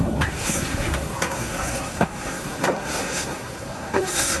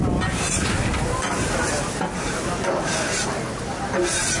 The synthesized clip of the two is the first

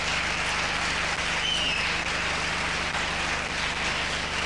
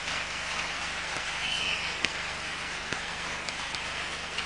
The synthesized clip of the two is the second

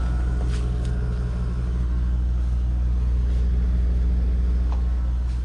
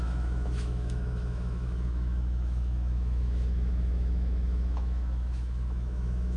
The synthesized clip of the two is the second